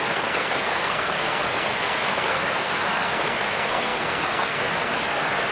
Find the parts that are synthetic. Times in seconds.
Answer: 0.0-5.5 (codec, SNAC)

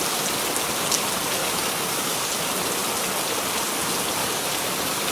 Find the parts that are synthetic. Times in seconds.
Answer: 1.4-2.3 (codec, DAC); 4.2-5.1

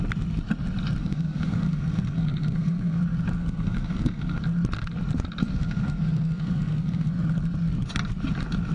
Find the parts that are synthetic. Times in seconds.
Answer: 1.0-3.0 (codec, SNAC); 3.4-4.4; 5.4-7.1